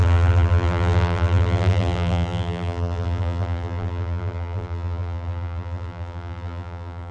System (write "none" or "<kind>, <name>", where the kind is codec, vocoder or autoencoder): vocoder, BigVGAN v2